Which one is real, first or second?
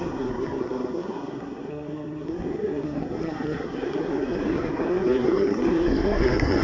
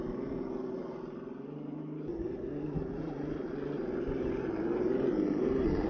second